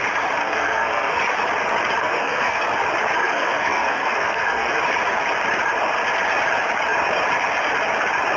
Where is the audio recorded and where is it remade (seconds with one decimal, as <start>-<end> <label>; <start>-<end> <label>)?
0.0-0.4 recorded; 0.4-1.2 remade; 1.2-2.0 recorded; 2.0-2.6 remade; 2.6-3.2 recorded; 3.2-4.8 remade; 4.8-8.4 recorded